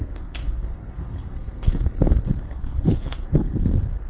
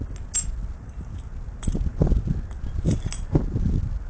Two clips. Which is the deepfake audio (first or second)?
first